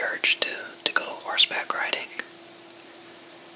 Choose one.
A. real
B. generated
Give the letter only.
A